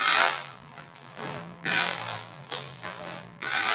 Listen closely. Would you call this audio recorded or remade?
remade